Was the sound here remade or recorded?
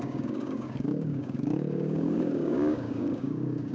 remade